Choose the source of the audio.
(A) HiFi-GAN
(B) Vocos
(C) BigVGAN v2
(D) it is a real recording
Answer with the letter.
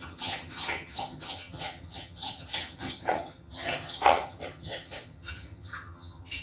A